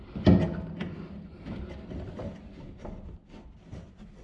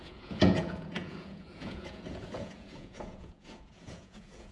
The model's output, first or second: second